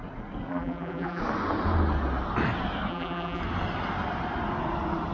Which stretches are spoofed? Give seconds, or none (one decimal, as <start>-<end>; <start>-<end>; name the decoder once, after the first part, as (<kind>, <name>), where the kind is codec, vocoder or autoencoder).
0.5-1.2 (vocoder, BigVGAN v2); 2.9-3.4